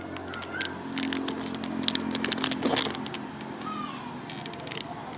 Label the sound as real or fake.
real